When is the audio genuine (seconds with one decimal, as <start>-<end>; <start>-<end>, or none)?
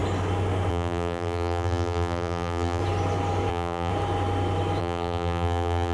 0.0-0.7; 2.8-3.5; 3.9-4.8